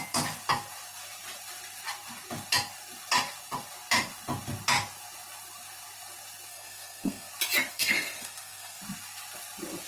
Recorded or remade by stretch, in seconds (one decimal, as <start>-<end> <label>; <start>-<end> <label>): 0.0-6.5 recorded; 6.5-7.3 remade; 7.3-7.7 recorded; 7.7-8.8 remade; 8.8-9.9 recorded